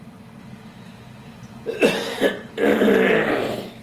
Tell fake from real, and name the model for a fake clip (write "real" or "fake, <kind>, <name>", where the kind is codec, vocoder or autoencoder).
fake, vocoder, BigVGAN v2